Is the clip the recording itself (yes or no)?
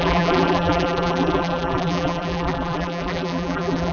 no